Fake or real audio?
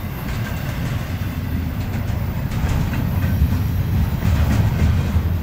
real